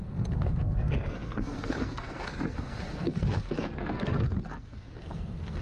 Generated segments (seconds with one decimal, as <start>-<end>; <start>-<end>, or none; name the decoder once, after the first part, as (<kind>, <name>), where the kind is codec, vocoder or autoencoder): 0.0-5.6 (codec, SNAC)